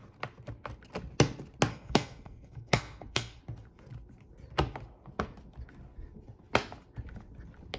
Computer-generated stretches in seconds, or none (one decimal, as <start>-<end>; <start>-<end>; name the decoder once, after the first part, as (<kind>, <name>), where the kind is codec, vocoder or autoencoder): 1.7-3.4 (codec, SNAC)